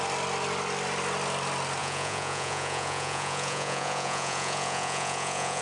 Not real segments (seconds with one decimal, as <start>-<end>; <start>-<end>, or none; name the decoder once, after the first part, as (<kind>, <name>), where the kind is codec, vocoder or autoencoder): 1.8-5.6 (vocoder, Vocos)